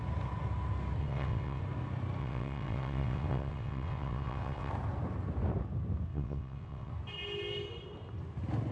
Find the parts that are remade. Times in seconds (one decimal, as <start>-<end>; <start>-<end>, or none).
1.0-1.6; 2.2-4.7; 6.1-6.9